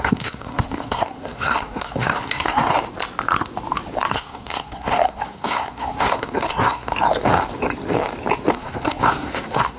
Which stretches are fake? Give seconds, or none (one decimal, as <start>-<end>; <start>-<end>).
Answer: 0.0-2.7; 4.1-6.9; 8.5-9.8